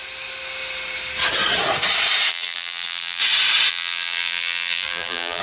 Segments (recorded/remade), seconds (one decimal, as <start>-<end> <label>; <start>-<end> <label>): 0.0-2.3 recorded; 2.3-3.2 remade; 3.2-3.7 recorded; 3.7-5.4 remade